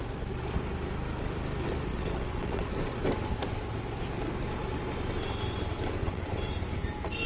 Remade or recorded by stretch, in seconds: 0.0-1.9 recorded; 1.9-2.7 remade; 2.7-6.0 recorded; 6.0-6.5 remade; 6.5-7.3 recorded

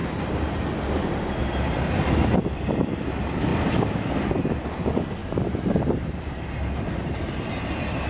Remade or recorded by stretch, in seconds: 0.0-1.9 remade; 1.9-3.5 recorded; 3.5-4.1 remade; 4.1-5.2 recorded; 5.2-8.1 remade

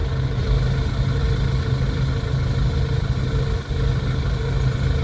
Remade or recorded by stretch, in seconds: 0.0-5.0 recorded

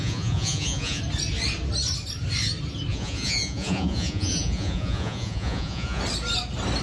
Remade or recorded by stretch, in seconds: 0.0-1.0 remade; 1.0-2.9 recorded; 2.9-6.0 remade; 6.0-6.8 recorded

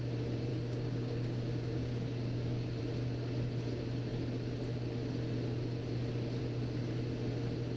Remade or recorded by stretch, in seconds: 0.0-0.5 recorded; 0.5-2.8 remade; 2.8-7.8 recorded

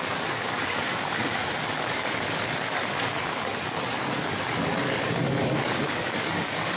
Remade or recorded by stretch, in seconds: 0.0-3.5 remade; 3.5-4.2 recorded; 4.2-6.8 remade